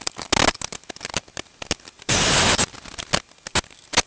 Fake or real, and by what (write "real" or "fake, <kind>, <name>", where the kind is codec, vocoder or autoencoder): real